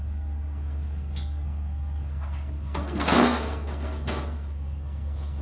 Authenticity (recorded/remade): remade